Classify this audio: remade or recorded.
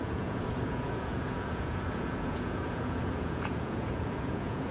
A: remade